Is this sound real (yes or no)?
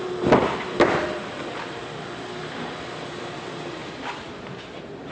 yes